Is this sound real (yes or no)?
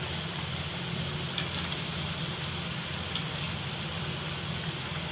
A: yes